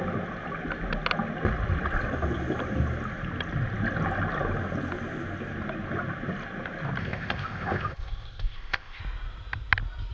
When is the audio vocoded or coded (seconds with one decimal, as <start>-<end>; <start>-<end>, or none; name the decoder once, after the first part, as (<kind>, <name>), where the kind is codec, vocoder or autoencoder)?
7.0-9.0 (codec, ZipCodec)